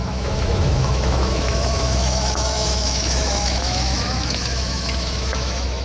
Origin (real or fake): fake